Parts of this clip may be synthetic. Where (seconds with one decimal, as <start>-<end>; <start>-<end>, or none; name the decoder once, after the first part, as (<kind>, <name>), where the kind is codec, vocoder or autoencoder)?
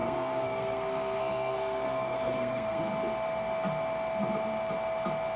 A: 0.0-2.9 (codec, SNAC)